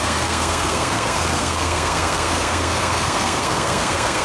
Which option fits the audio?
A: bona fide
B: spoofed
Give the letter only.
B